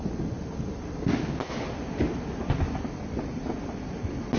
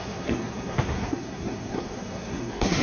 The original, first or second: first